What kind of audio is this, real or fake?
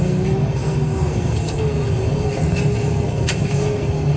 fake